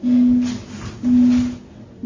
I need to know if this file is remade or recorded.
recorded